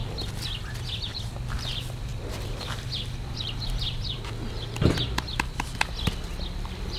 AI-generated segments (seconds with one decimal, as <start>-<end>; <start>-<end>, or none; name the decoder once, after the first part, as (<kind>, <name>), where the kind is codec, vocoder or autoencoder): 2.1-4.2 (vocoder, BigVGAN v2)